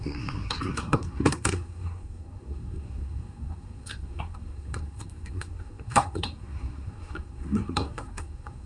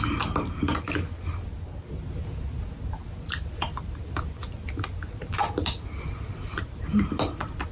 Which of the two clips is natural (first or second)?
second